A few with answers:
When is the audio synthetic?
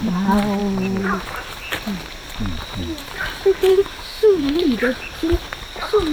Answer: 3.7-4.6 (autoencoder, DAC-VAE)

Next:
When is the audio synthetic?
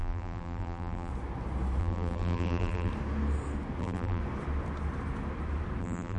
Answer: 0.0-1.1 (vocoder, BigVGAN v2); 1.8-2.9; 3.8-4.2; 5.8-6.2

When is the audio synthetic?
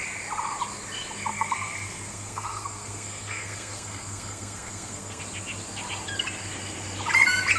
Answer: 1.3-5.2 (codec, SNAC)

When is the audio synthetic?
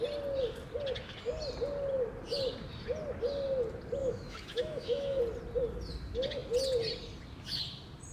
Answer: 4.0-5.2 (autoencoder, DAC-VAE)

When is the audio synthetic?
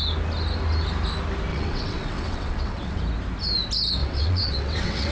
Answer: 1.5-3.0 (vocoder, WaveNeXt); 4.0-5.1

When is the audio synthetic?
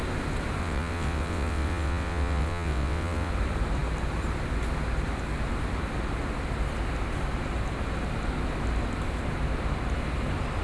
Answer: 0.6-3.3 (vocoder, WaveNeXt)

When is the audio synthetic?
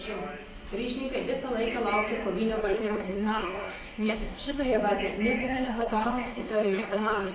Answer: 2.6-4.8 (codec, SNAC); 5.4-7.3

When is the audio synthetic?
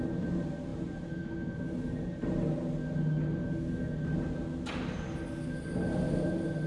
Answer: none